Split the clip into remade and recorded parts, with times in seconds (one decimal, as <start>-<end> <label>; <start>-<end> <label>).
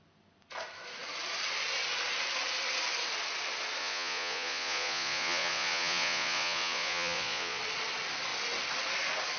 0.0-3.8 recorded; 3.8-7.6 remade; 7.6-9.4 recorded